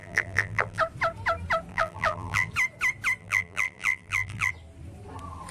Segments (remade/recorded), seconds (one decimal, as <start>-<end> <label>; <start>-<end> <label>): 0.0-0.8 remade; 0.8-1.7 recorded; 1.7-2.5 remade; 2.5-3.2 recorded; 3.2-4.5 remade; 4.5-5.5 recorded